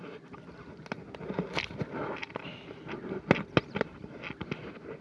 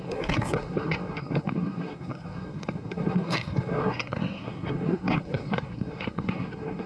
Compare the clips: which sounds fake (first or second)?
second